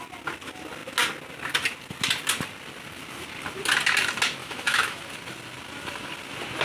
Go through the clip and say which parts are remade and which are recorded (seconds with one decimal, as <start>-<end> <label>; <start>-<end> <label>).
0.0-4.4 recorded; 4.4-5.0 remade; 5.0-6.6 recorded